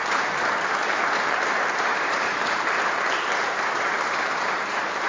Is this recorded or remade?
remade